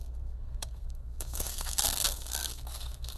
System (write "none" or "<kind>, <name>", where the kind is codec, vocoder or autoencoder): codec, SNAC